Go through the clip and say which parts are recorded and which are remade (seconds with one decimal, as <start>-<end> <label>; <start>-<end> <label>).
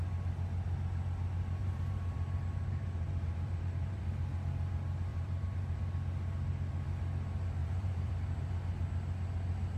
0.0-1.6 recorded; 1.6-4.0 remade; 4.0-5.1 recorded; 5.1-5.8 remade; 5.8-7.6 recorded; 7.6-8.5 remade; 8.5-9.8 recorded